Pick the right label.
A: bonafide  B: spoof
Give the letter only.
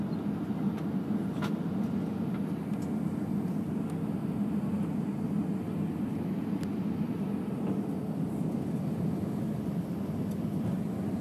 A